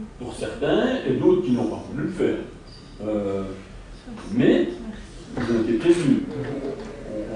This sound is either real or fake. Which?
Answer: real